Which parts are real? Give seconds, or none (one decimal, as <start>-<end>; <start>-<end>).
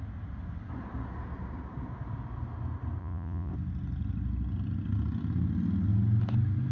0.0-3.0; 3.5-6.7